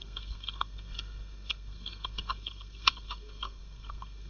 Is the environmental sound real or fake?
fake